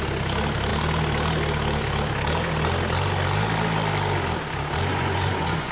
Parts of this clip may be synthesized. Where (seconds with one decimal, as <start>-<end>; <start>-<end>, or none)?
4.9-5.7